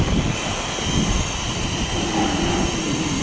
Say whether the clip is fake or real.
real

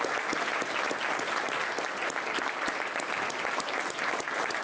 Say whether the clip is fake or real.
real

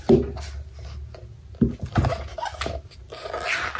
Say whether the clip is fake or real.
real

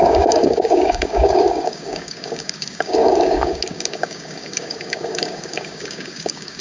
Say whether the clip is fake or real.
fake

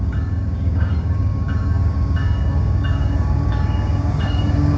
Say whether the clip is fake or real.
fake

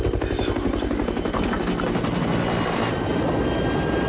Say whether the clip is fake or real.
real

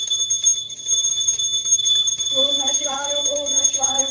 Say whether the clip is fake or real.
fake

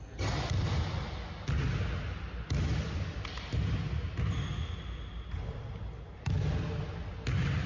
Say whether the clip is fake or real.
real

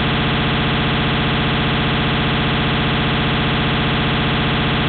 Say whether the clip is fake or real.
real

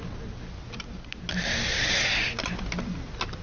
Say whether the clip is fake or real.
real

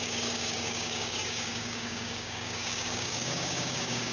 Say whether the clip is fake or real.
fake